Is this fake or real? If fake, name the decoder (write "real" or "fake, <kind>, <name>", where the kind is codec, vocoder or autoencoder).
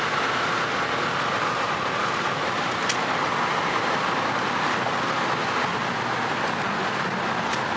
real